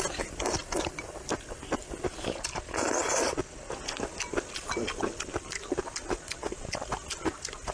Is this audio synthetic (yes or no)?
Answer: no